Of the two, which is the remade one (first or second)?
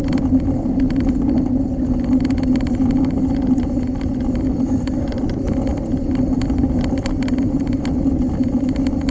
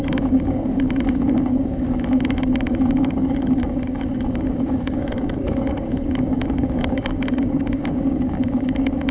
second